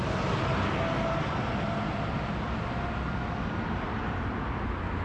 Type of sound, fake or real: real